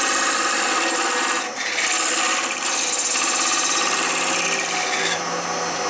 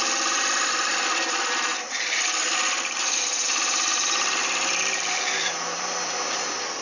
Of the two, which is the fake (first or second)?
second